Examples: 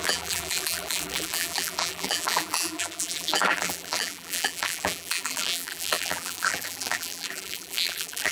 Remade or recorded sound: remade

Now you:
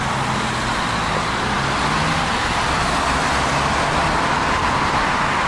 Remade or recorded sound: recorded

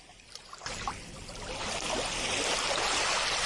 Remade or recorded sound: recorded